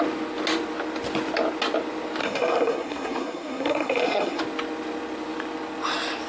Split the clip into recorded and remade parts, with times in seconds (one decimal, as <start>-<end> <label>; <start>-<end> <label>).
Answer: 0.0-2.2 recorded; 2.2-4.4 remade; 4.4-6.3 recorded